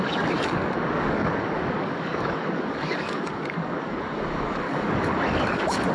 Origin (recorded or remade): remade